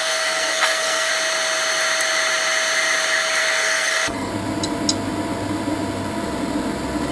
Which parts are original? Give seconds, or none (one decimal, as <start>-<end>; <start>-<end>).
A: 1.1-3.4; 4.3-7.1